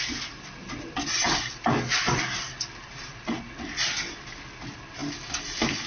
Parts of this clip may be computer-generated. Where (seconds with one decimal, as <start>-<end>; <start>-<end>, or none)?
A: none